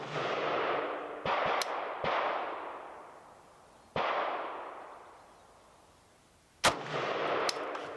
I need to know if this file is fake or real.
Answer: real